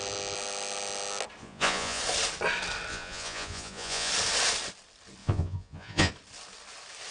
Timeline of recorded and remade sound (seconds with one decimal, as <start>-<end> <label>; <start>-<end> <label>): 0.0-1.4 recorded; 1.4-2.0 remade; 2.0-2.9 recorded; 2.9-4.1 remade; 4.1-5.2 recorded; 5.2-6.1 remade; 6.1-7.1 recorded